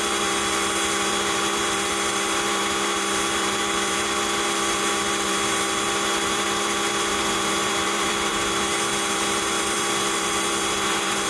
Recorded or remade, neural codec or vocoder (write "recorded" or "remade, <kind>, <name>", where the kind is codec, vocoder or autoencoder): remade, vocoder, BigVGAN v2